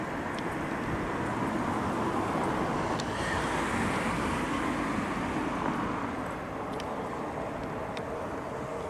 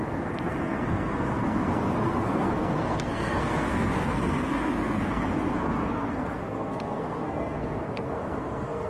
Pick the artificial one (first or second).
second